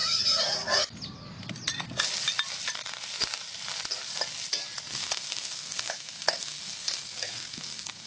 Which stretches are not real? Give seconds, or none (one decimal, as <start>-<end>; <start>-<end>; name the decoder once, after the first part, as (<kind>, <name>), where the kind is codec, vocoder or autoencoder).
4.9-8.1 (codec, SNAC)